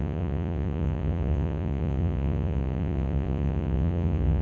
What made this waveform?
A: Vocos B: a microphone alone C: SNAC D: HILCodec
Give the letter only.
A